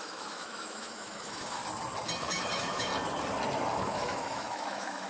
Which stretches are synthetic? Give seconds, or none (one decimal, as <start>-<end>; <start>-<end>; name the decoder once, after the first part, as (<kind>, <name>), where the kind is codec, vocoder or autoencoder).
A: 0.0-1.6 (autoencoder, DAC-VAE); 2.2-2.9; 3.7-5.1